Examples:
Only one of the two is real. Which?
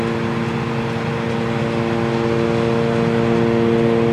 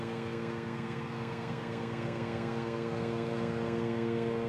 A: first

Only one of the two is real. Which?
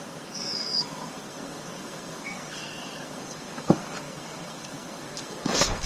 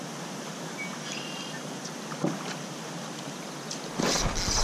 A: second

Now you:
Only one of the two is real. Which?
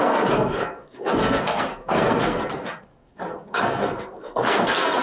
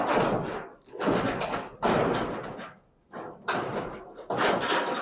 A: second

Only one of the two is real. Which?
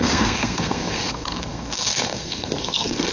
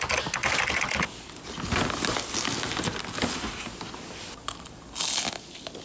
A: second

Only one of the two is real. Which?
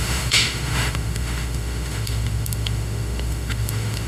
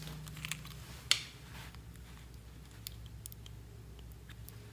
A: second